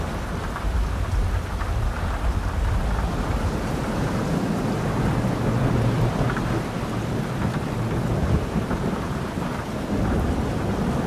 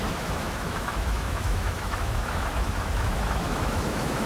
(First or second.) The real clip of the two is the first